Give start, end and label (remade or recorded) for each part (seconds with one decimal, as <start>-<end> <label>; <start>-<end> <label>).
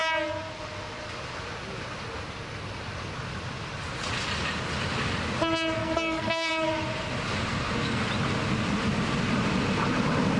0.0-5.8 recorded; 5.8-6.5 remade; 6.5-7.5 recorded; 7.5-8.0 remade; 8.0-10.4 recorded